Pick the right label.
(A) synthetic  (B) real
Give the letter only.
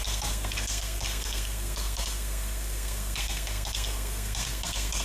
A